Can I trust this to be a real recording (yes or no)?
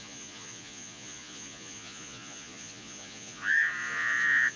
no